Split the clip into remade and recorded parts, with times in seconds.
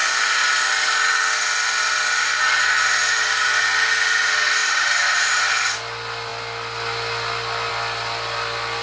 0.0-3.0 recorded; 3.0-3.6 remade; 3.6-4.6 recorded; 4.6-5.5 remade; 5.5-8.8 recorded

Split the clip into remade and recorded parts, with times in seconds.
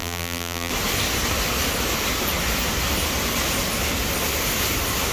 0.0-0.7 remade; 0.7-5.1 recorded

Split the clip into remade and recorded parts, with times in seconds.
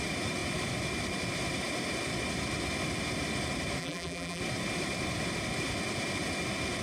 0.0-3.8 recorded; 3.8-4.4 remade; 4.4-6.8 recorded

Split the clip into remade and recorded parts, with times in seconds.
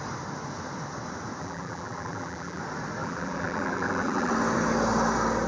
0.0-1.4 recorded; 1.4-2.6 remade; 2.6-3.0 recorded; 3.0-4.3 remade; 4.3-5.5 recorded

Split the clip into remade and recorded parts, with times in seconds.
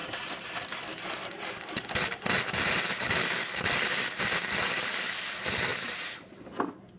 0.0-5.7 recorded; 5.7-6.4 remade; 6.4-7.0 recorded